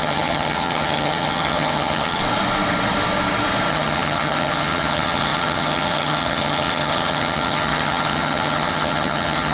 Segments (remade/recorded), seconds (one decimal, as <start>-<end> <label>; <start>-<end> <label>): 0.0-2.2 remade; 2.2-3.7 recorded; 3.7-9.5 remade